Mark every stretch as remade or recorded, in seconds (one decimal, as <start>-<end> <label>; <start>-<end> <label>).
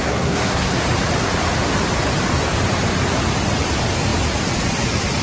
0.0-0.7 remade; 0.7-5.2 recorded